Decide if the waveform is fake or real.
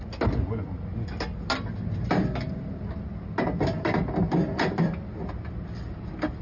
real